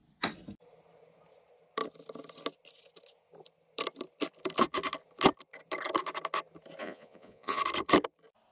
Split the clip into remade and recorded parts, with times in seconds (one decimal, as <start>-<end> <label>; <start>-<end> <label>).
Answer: 0.0-6.8 recorded; 6.8-7.6 remade; 7.6-8.5 recorded